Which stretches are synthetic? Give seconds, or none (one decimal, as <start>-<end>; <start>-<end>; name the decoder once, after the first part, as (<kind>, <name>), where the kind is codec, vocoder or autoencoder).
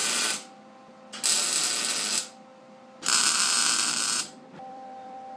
3.2-5.4 (vocoder, BigVGAN v2)